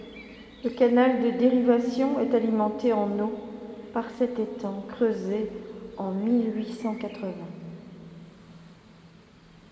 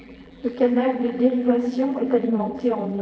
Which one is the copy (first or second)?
second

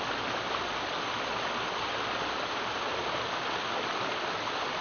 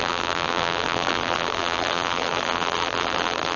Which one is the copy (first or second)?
second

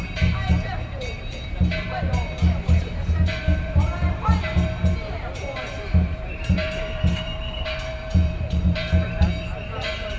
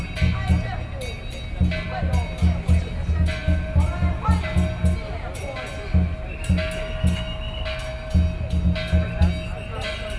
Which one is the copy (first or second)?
first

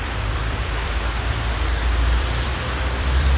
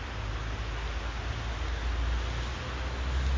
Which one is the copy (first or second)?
first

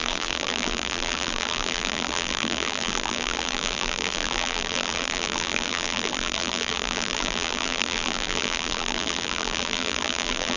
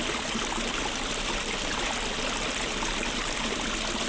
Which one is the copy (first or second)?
first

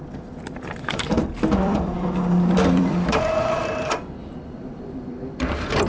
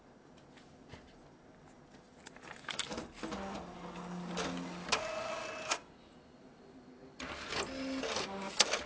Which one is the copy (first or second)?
first